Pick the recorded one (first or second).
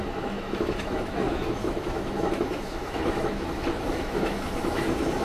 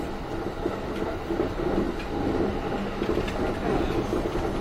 second